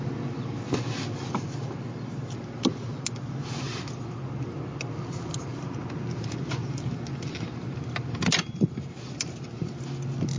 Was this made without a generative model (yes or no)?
yes